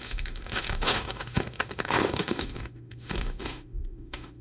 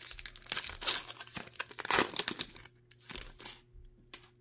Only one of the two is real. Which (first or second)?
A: second